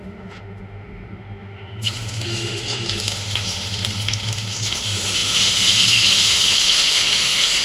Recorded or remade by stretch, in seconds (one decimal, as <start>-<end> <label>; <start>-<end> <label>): 0.0-7.6 remade